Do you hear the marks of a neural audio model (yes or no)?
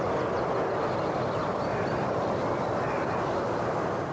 no